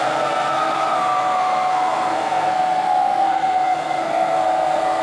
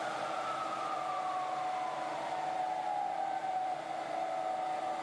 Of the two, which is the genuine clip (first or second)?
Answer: second